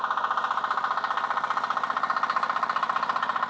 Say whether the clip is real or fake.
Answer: real